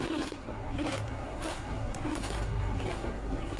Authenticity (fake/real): fake